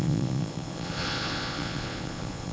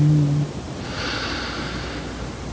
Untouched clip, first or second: second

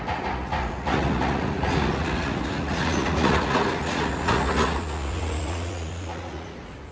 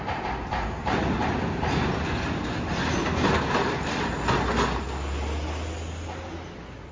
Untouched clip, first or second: second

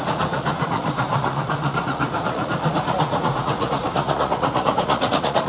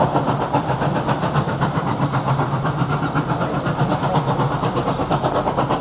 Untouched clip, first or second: second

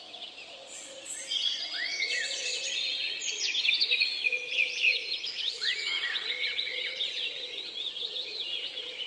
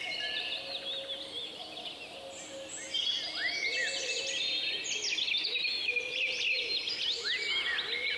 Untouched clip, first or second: second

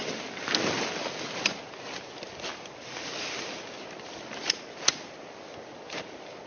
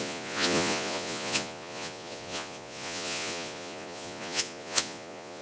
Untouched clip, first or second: first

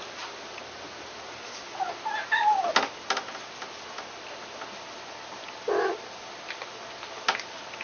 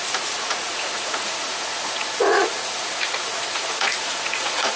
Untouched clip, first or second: first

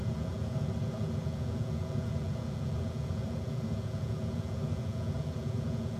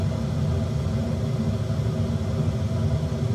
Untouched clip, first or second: second